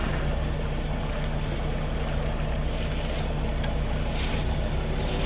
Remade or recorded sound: recorded